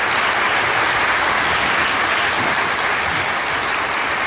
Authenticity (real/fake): real